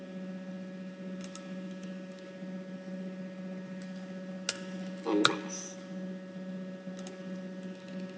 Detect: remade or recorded recorded